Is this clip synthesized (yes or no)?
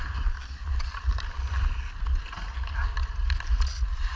no